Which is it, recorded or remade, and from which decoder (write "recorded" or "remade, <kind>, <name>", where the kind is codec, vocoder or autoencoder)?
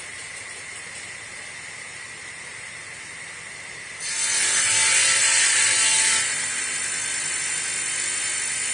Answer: recorded